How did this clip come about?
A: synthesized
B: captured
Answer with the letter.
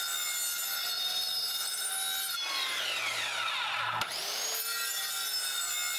B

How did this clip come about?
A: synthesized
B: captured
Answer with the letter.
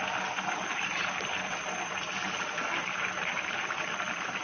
B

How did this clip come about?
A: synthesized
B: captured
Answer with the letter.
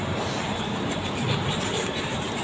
A